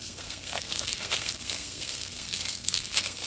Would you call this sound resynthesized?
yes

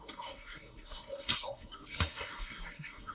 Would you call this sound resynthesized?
yes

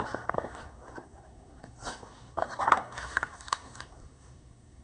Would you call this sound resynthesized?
yes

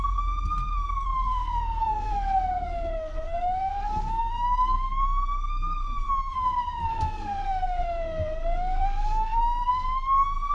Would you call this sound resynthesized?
yes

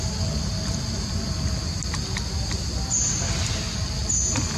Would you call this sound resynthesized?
no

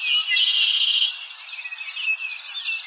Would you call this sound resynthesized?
no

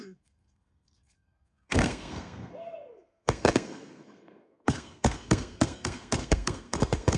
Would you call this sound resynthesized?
yes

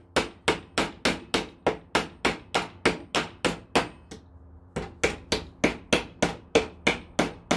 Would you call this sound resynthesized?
no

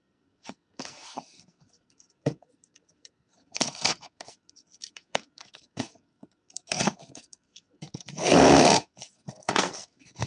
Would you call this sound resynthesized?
yes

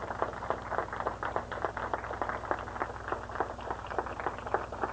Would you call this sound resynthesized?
no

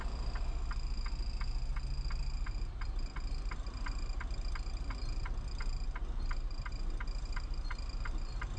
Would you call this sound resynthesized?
no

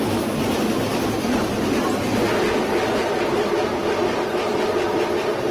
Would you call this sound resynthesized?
no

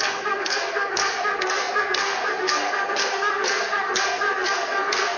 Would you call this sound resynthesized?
yes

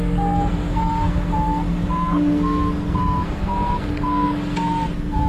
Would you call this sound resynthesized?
yes